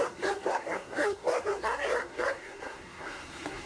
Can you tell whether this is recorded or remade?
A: remade